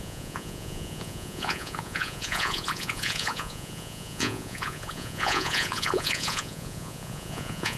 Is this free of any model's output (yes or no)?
no